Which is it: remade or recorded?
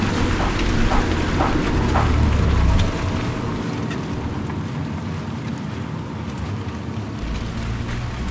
recorded